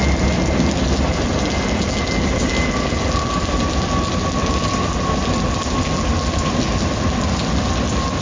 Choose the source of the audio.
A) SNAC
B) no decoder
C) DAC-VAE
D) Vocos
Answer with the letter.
B